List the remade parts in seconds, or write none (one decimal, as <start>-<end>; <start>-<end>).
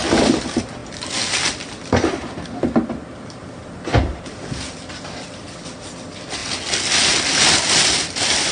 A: none